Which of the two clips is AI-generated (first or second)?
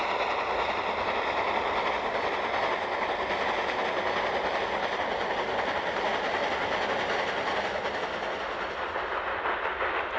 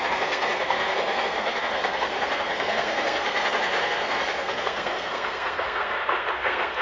second